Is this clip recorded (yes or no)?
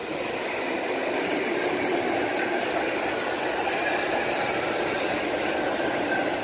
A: yes